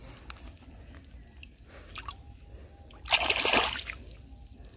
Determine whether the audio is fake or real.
real